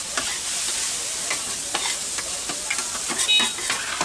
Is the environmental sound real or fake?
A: real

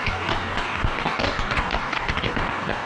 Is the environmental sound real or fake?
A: fake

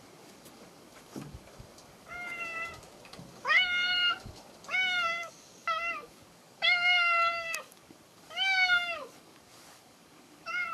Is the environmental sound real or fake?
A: fake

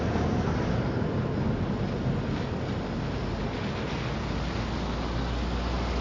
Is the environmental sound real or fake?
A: real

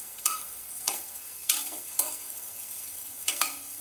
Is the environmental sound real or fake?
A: fake